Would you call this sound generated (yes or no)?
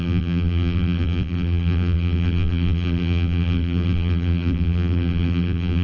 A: yes